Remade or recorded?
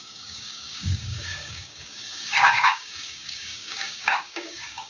remade